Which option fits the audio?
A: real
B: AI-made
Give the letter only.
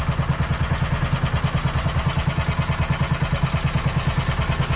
A